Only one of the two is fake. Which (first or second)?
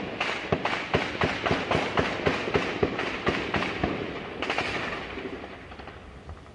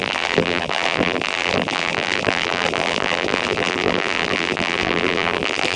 second